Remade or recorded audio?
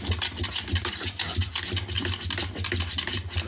recorded